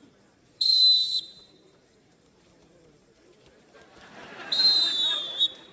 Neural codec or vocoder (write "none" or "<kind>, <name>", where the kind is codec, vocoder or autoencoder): vocoder, BigVGAN v2